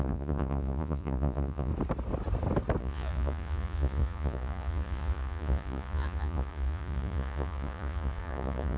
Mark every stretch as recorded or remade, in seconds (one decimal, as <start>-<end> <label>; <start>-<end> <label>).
0.0-1.7 remade; 1.7-2.8 recorded; 2.8-8.8 remade